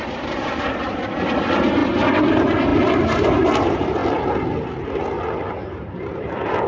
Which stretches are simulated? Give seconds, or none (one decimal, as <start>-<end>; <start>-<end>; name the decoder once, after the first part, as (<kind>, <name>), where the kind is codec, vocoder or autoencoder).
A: 0.0-1.8 (vocoder, BigVGAN v2); 2.3-4.0; 5.5-6.7